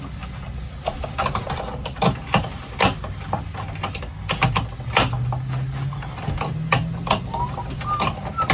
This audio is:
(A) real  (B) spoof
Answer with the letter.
A